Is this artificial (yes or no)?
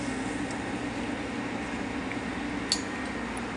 no